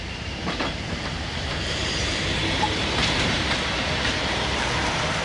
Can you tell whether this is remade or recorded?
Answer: remade